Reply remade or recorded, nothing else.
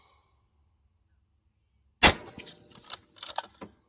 recorded